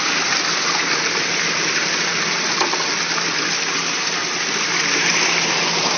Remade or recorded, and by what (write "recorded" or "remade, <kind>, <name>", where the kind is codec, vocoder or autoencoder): recorded